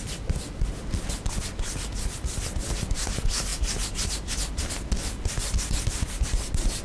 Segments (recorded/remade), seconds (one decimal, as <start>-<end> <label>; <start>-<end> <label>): 0.0-6.8 recorded